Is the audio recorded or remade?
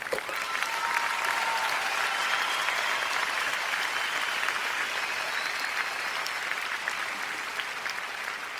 recorded